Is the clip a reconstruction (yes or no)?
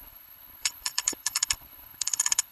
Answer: yes